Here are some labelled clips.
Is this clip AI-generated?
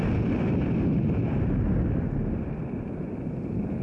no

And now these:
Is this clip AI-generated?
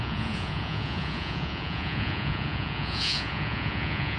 yes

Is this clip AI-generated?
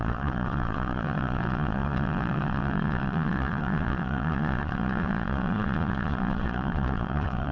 yes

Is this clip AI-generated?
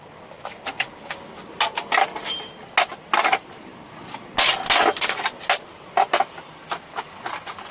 no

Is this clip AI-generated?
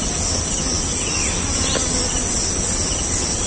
no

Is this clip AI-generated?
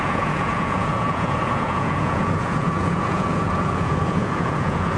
yes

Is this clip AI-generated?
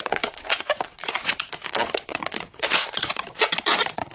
yes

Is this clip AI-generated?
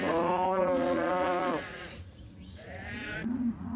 yes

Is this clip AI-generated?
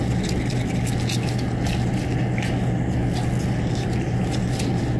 no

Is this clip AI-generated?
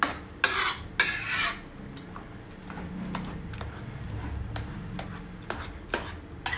no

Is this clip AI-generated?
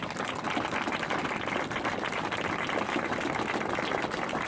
no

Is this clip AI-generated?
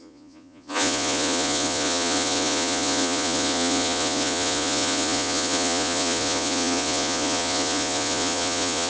yes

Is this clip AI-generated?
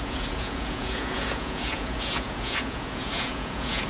yes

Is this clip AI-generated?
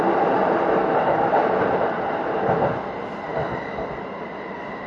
no